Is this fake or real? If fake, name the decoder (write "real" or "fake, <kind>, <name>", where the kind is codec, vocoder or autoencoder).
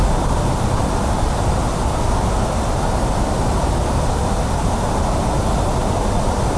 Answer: real